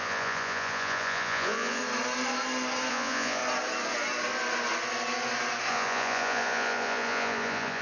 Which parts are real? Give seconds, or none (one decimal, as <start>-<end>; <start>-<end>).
1.8-2.9; 3.4-5.7

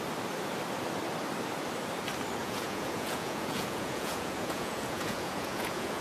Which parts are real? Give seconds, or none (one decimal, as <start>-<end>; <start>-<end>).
0.0-2.4

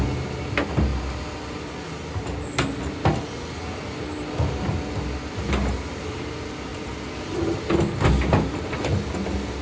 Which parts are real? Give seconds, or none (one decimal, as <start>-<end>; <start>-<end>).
0.0-9.6

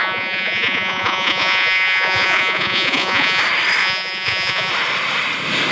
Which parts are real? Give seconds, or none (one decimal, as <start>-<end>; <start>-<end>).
3.4-3.8; 4.7-5.7

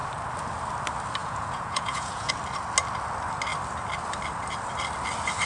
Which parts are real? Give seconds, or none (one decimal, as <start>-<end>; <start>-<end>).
0.0-1.2; 2.3-5.5

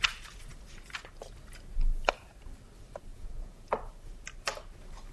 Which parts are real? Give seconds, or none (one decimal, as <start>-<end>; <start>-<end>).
0.0-3.1; 3.6-5.1